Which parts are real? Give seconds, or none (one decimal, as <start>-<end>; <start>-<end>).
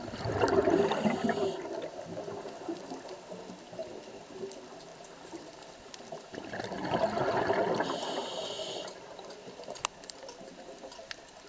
0.0-11.5